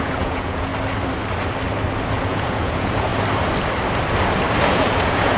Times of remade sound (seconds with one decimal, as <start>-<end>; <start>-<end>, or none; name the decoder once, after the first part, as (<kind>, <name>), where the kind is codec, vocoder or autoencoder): 0.0-0.7 (vocoder, Vocos); 2.2-3.1; 4.6-5.4